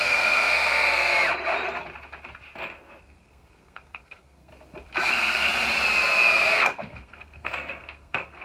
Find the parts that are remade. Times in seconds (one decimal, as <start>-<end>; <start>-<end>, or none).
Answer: 0.0-1.1; 3.0-4.5; 5.1-5.5; 6.5-8.4